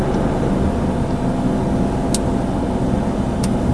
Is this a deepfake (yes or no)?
no